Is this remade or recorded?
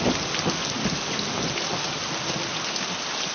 recorded